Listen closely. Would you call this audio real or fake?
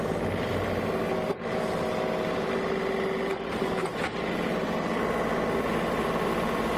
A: real